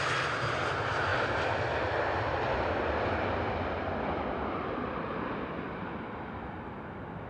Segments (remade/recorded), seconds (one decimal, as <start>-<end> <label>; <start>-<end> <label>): 0.0-7.3 recorded